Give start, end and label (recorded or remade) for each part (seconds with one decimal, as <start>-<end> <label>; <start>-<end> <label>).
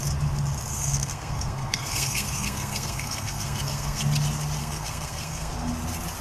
0.0-0.7 recorded; 0.7-4.0 remade; 4.0-4.6 recorded; 4.6-5.5 remade; 5.5-6.2 recorded